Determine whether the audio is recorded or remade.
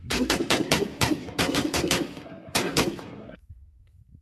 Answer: remade